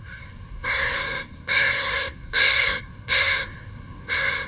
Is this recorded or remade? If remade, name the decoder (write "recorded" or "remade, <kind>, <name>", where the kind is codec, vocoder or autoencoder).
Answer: remade, codec, SNAC